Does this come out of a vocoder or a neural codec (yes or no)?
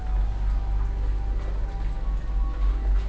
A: no